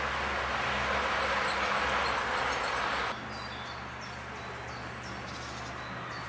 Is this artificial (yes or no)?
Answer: no